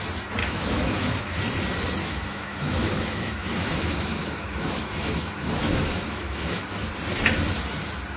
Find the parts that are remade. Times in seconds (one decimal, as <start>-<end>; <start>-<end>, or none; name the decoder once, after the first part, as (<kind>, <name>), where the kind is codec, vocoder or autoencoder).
0.4-1.4 (autoencoder, DAC-VAE); 2.0-6.9